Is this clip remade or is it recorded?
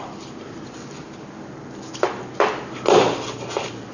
recorded